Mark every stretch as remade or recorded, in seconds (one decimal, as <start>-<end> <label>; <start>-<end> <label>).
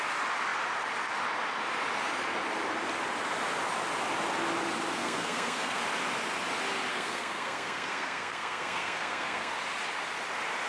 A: 0.0-5.0 recorded; 5.0-5.8 remade; 5.8-6.9 recorded; 6.9-9.5 remade; 9.5-10.7 recorded